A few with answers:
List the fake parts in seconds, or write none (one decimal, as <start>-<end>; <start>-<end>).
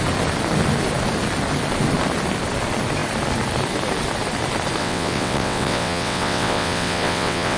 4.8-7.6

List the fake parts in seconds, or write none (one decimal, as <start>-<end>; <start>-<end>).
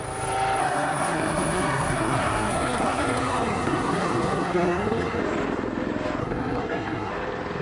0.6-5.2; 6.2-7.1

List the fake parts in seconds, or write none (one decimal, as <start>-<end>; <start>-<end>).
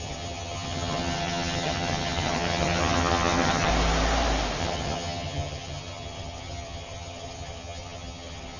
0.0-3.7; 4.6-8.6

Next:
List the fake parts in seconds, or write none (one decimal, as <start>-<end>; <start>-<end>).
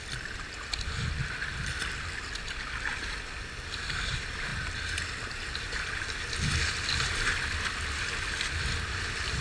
none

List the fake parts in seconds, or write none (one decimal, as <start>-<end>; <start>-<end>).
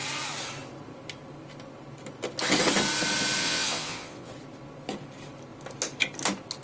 3.4-4.3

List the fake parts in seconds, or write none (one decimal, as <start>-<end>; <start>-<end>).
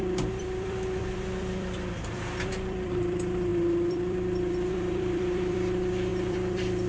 0.0-6.9